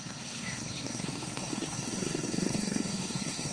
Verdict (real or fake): fake